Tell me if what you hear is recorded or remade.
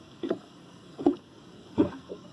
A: remade